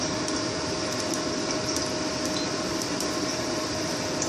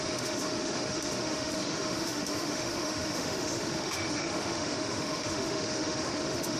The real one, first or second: first